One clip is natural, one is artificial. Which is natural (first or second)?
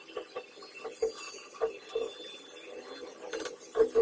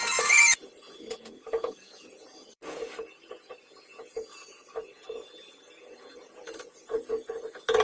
first